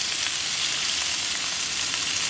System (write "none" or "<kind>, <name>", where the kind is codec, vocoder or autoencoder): none